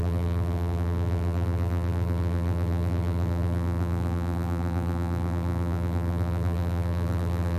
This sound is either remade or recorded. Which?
remade